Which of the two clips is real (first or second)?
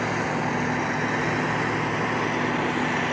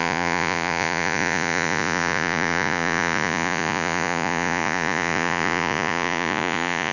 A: first